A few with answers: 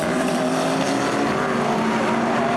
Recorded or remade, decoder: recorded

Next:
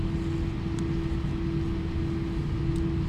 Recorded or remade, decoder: recorded